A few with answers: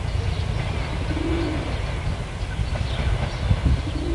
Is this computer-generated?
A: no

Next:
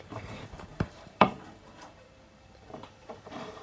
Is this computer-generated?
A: yes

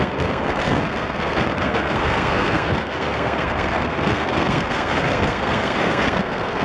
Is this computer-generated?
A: yes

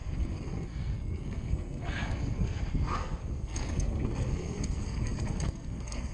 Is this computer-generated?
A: yes